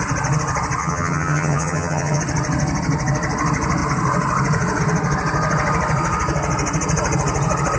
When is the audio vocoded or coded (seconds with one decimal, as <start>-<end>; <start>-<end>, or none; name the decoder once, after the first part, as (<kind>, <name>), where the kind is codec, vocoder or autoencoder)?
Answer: 0.8-2.2 (vocoder, HiFi-GAN)